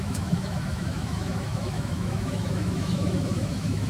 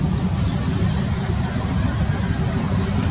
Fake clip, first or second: first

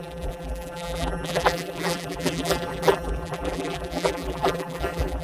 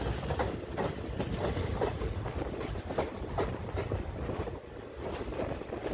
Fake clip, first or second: first